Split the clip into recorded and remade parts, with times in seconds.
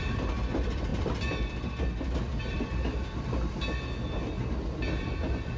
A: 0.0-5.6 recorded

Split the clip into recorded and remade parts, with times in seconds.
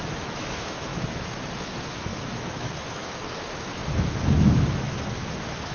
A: 0.0-5.7 remade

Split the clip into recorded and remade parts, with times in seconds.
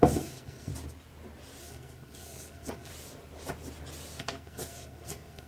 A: 0.0-0.7 remade; 0.7-1.6 recorded; 1.6-2.9 remade; 2.9-4.2 recorded; 4.2-5.5 remade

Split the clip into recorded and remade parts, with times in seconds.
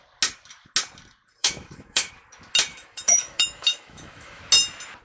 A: 0.0-1.4 recorded; 1.4-2.1 remade; 2.1-2.7 recorded; 2.7-4.4 remade; 4.4-5.0 recorded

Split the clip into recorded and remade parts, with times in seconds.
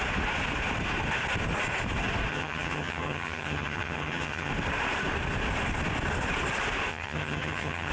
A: 0.0-2.3 recorded; 2.3-4.5 remade; 4.5-6.9 recorded; 6.9-7.9 remade